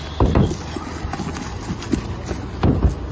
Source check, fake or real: real